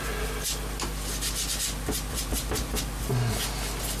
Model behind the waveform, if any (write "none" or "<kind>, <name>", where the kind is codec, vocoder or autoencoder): none